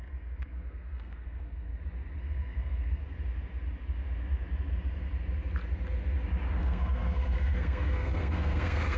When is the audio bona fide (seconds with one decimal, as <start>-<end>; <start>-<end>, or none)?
1.7-2.2; 3.0-6.6